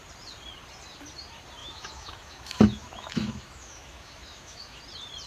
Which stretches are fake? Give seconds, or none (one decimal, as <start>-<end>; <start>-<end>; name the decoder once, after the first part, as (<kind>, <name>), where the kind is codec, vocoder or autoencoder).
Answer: 1.6-4.8 (autoencoder, DAC-VAE)